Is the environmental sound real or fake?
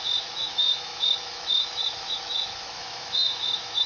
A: fake